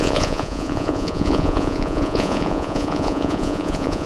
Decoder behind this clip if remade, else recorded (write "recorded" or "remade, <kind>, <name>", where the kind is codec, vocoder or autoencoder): remade, vocoder, Vocos